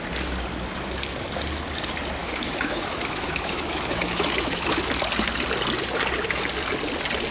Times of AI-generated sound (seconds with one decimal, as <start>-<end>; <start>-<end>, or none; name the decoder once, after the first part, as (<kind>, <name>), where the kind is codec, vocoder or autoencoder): 2.2-4.9 (autoencoder, DAC-VAE)